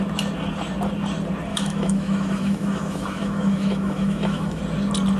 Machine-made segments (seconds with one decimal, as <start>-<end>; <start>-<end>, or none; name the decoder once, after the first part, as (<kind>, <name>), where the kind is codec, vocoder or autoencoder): 1.5-4.6 (autoencoder, DAC-VAE)